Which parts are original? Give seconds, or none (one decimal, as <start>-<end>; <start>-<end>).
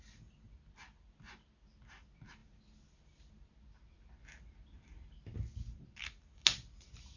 0.0-7.2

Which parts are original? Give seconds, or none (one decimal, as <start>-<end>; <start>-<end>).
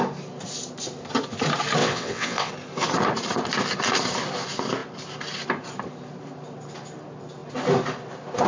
0.0-1.8; 2.5-8.5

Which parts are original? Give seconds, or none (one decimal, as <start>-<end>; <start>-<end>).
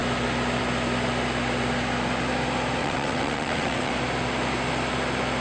0.0-2.8; 3.9-5.4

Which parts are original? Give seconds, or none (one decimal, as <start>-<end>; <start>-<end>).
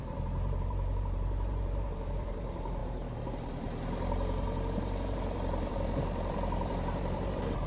none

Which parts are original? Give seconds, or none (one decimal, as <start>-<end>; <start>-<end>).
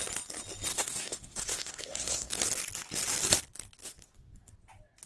0.0-0.7; 2.4-3.8; 4.5-5.1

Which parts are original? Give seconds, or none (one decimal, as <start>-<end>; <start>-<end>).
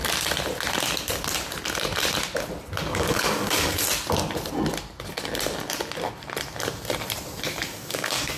0.0-2.8; 3.8-7.5